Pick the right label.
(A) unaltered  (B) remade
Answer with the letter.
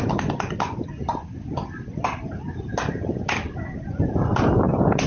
A